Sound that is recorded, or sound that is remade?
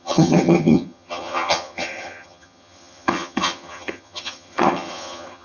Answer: remade